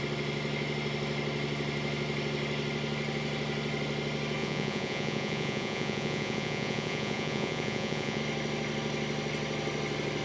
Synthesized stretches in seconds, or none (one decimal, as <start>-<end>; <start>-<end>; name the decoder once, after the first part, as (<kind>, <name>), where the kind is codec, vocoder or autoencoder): 4.4-8.2 (vocoder, Vocos)